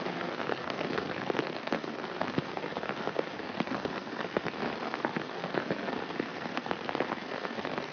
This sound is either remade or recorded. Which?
remade